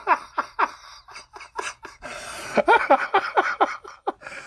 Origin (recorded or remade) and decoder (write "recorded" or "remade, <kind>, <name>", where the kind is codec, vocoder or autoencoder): recorded